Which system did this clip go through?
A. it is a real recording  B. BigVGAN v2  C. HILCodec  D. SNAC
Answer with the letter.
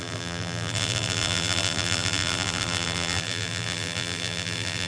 B